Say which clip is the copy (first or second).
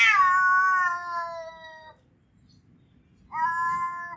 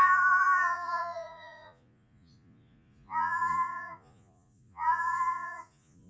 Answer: second